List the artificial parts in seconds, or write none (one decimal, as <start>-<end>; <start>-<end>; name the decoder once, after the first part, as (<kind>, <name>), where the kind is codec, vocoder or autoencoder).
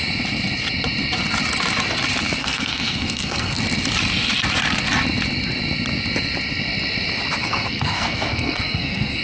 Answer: 2.4-3.6 (codec, SNAC); 7.4-9.2